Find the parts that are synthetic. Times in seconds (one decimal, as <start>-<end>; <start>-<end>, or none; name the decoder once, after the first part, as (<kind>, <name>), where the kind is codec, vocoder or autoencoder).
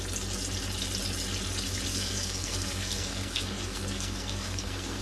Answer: 1.9-5.0 (codec, SNAC)